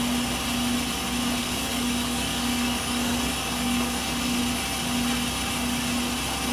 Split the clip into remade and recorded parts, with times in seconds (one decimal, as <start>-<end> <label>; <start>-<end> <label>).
0.0-1.4 recorded; 1.4-4.4 remade; 4.4-6.5 recorded